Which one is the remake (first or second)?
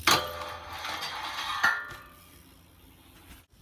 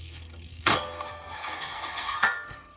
second